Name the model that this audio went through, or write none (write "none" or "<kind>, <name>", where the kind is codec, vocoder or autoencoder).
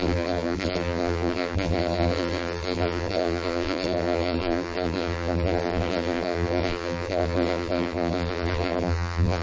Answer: vocoder, BigVGAN v2